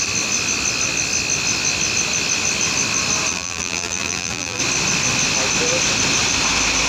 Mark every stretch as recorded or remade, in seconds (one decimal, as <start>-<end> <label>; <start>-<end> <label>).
0.0-3.3 recorded; 3.3-4.6 remade; 4.6-6.9 recorded